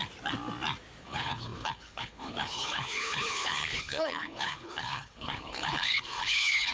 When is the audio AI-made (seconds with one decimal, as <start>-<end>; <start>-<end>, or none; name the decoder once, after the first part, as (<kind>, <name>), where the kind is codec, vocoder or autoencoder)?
1.0-6.7 (codec, HILCodec)